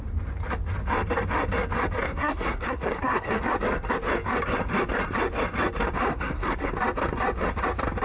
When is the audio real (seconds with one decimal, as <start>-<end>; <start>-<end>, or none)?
0.0-2.0; 3.4-6.1; 6.7-8.0